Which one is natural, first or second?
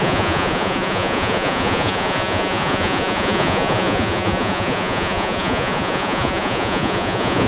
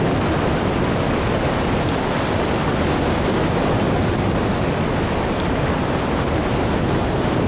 second